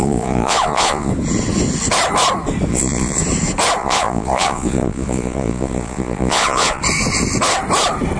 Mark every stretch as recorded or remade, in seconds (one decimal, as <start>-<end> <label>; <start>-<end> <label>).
0.0-1.1 remade; 1.1-2.7 recorded; 2.7-3.2 remade; 3.2-3.8 recorded; 3.8-6.8 remade; 6.8-8.2 recorded